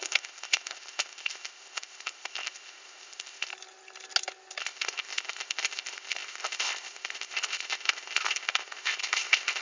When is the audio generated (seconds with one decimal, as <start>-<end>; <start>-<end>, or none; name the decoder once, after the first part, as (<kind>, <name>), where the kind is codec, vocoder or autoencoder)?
0.0-3.5 (codec, ZipCodec); 4.6-9.6